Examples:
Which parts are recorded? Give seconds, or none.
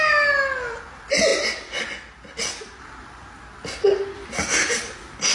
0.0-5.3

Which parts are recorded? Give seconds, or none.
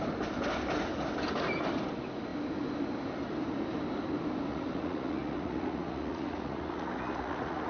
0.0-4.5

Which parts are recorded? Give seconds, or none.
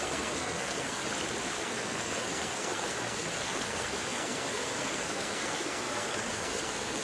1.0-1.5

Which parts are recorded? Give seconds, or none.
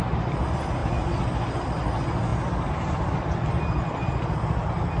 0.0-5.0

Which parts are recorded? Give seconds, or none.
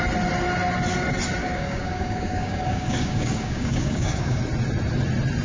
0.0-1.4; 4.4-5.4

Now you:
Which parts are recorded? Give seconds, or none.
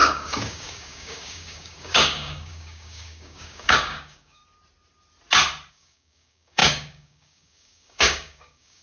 4.4-5.7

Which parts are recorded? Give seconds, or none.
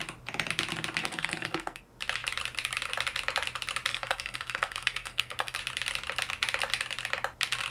0.0-1.0; 1.8-3.9; 5.6-7.7